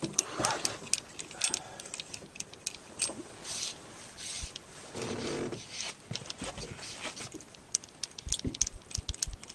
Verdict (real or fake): real